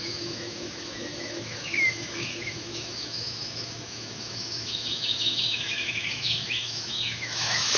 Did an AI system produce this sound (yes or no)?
yes